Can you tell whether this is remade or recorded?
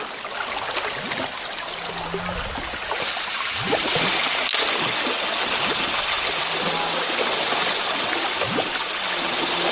recorded